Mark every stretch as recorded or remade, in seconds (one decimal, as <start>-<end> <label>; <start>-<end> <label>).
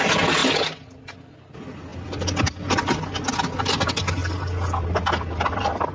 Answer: 0.0-0.4 recorded; 0.4-1.4 remade; 1.4-4.2 recorded; 4.2-5.9 remade